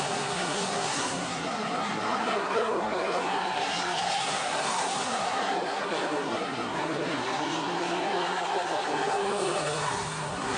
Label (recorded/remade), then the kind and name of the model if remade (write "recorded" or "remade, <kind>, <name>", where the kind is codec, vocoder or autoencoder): remade, codec, SNAC